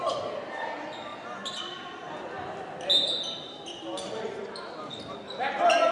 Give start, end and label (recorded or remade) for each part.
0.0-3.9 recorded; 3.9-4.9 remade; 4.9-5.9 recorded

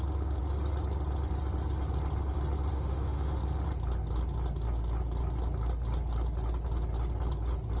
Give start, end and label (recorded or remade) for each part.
0.0-2.7 recorded; 2.7-3.4 remade; 3.4-7.8 recorded

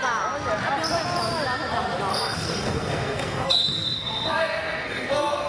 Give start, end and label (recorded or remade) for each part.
0.0-2.1 recorded; 2.1-5.5 remade

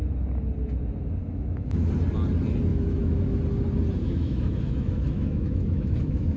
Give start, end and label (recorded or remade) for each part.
0.0-1.2 recorded; 1.2-1.9 remade; 1.9-2.7 recorded; 2.7-3.4 remade; 3.4-4.0 recorded; 4.0-6.4 remade

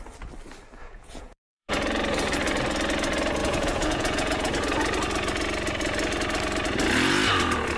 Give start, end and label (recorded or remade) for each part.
0.0-0.8 recorded; 0.8-1.7 remade; 1.7-3.4 recorded; 3.4-4.5 remade; 4.5-7.8 recorded